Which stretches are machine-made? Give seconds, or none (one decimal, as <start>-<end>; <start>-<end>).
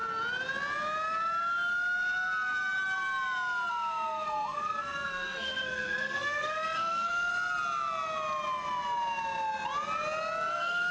3.7-7.3; 10.5-10.9